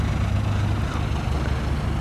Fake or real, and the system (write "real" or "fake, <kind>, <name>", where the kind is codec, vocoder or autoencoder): real